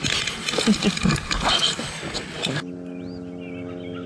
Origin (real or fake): real